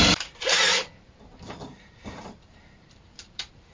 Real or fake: fake